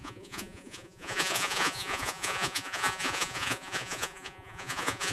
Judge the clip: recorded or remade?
remade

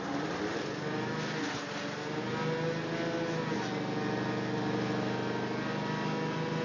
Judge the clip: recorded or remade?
recorded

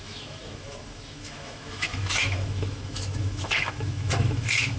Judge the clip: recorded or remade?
remade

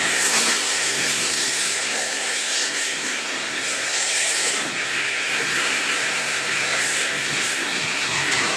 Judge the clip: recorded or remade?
remade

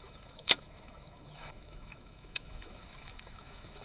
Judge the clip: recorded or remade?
remade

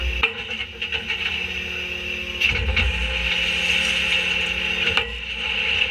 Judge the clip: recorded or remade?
recorded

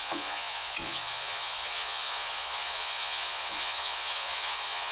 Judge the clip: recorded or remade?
remade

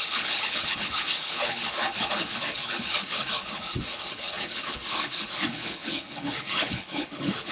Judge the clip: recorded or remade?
remade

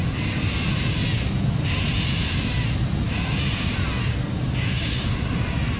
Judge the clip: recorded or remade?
recorded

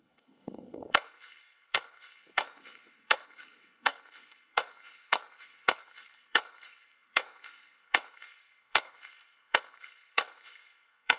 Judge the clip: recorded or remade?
remade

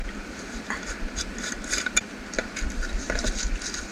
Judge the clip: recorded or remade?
recorded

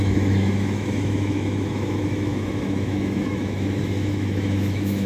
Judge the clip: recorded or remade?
remade